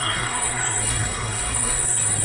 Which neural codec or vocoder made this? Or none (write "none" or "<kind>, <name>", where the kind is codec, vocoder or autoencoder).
codec, SNAC